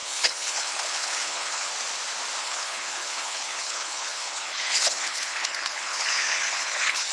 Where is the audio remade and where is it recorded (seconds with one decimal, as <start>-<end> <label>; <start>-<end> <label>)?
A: 0.0-1.7 remade; 1.7-2.4 recorded; 2.4-7.1 remade